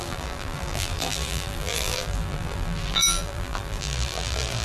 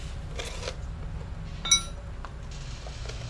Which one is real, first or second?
second